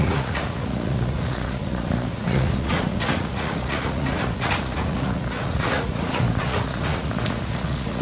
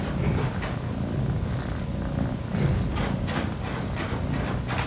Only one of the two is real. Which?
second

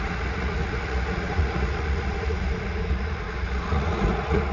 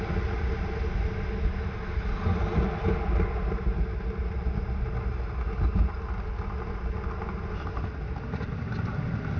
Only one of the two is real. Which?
second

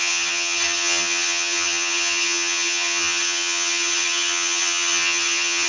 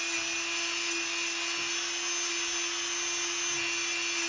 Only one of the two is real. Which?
second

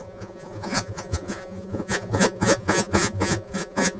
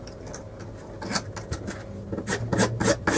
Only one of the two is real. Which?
second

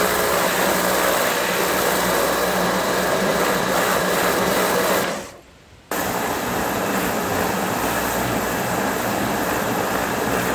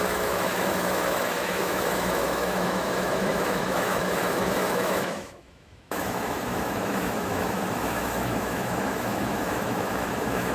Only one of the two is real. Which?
first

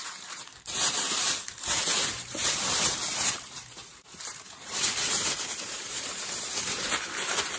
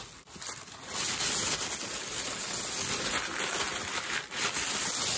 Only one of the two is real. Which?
second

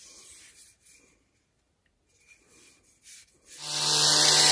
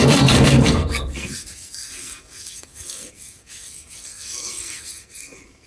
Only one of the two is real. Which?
first